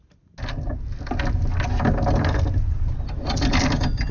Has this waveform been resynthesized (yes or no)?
no